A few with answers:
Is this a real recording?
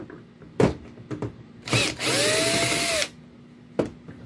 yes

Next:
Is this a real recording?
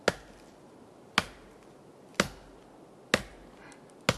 yes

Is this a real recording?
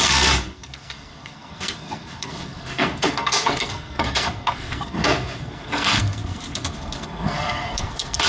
no